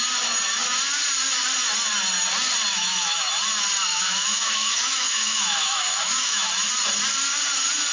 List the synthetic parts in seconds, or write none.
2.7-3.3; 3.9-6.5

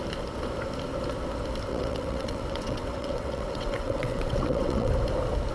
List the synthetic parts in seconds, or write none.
1.7-4.9

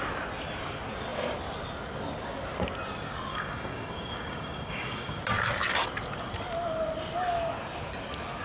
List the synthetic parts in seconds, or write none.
3.3-5.2

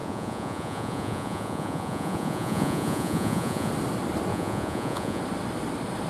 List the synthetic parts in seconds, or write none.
0.0-3.7; 4.3-5.2

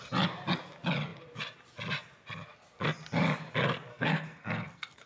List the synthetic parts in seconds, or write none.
3.9-5.1

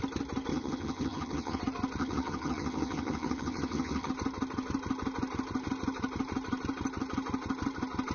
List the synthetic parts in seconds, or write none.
0.5-1.6; 2.0-4.1

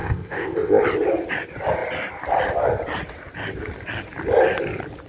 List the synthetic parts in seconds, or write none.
0.0-0.8

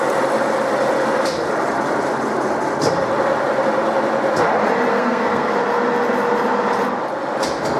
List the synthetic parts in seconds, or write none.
4.9-5.5